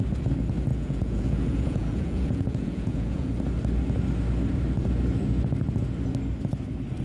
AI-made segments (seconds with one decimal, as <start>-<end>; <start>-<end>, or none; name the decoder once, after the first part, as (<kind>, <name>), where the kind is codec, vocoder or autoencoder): 0.7-3.3 (vocoder, Vocos)